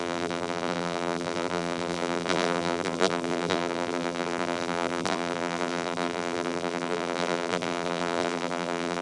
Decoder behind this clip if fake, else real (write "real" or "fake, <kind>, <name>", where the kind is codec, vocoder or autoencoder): fake, vocoder, BigVGAN v2